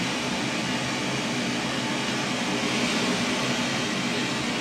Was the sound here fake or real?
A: real